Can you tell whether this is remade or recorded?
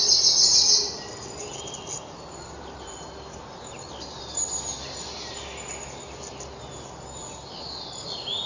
recorded